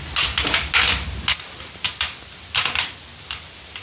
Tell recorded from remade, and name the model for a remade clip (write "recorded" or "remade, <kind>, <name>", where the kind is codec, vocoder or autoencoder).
recorded